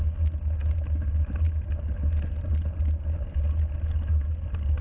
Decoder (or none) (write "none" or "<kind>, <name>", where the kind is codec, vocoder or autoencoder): none